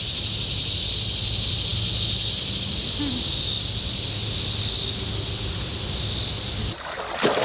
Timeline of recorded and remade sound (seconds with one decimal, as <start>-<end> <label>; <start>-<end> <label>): 0.0-7.4 recorded